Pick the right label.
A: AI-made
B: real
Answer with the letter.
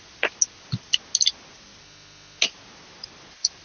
B